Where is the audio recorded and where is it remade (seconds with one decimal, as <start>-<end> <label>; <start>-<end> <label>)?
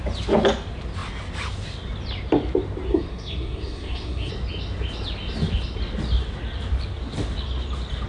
0.0-2.9 recorded; 2.9-4.3 remade; 4.3-8.1 recorded